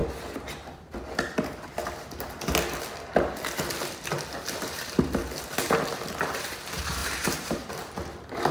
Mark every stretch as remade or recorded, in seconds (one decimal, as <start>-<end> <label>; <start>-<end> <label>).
0.0-4.6 recorded; 4.6-5.2 remade; 5.2-6.3 recorded; 6.3-8.5 remade